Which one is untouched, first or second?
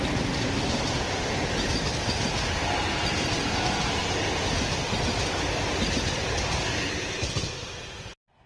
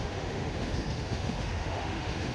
first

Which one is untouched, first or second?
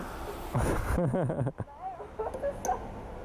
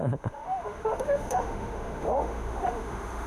first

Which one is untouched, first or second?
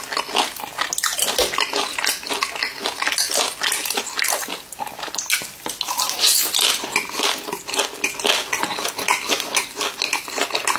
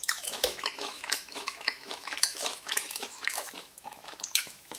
first